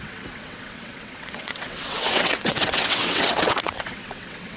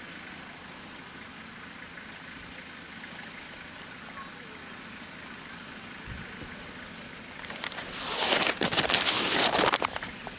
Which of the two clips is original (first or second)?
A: second